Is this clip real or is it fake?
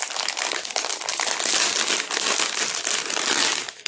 real